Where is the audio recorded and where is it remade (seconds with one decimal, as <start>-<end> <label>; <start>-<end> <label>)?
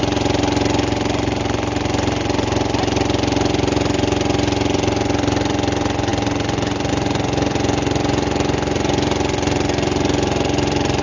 0.0-11.0 recorded